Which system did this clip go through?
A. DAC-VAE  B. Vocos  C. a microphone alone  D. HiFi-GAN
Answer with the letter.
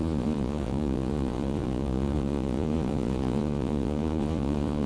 B